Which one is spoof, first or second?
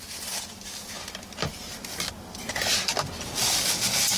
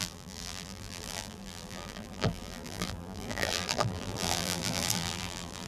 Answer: second